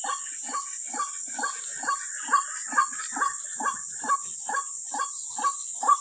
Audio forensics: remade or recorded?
recorded